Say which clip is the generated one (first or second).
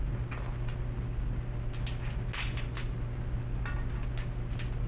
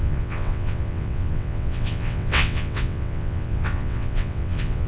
second